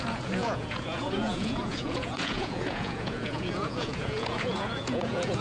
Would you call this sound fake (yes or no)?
yes